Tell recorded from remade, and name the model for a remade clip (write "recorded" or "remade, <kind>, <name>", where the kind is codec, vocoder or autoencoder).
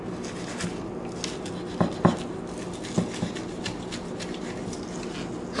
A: recorded